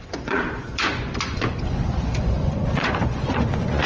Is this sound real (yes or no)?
no